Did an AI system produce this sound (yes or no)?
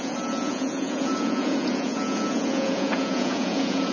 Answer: yes